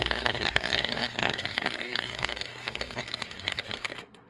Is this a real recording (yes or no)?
no